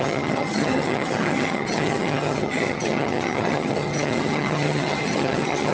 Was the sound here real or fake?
fake